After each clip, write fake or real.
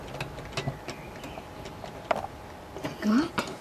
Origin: real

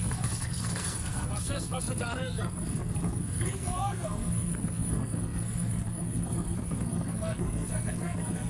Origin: fake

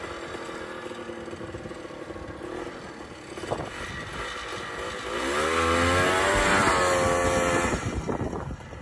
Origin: real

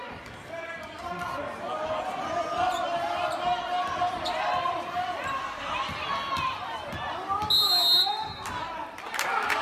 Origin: real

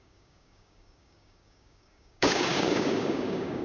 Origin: fake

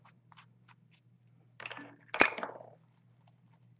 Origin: real